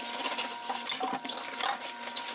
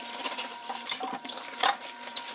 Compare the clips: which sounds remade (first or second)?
second